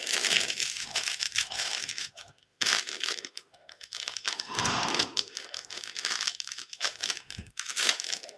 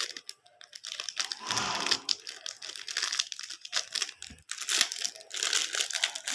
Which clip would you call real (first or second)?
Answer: second